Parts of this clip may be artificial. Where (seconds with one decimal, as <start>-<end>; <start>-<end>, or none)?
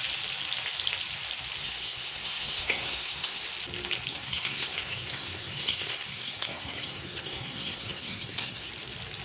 1.6-3.4; 4.1-8.7